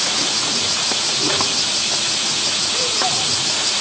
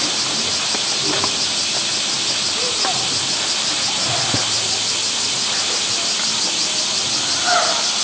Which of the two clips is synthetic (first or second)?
first